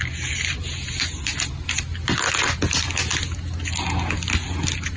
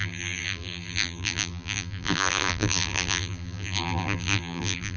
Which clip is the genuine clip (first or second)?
first